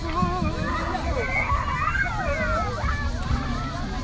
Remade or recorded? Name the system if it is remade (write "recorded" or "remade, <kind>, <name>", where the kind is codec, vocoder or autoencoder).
recorded